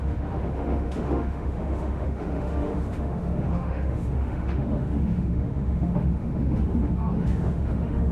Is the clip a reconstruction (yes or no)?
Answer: yes